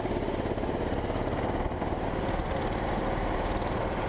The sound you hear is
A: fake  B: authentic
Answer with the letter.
B